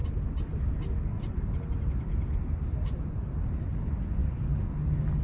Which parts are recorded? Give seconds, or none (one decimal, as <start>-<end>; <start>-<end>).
0.0-5.2